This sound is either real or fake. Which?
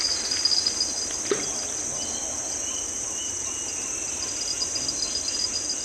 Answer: real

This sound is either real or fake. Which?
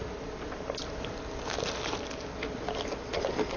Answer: real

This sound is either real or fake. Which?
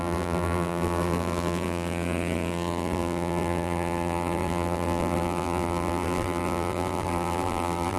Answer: fake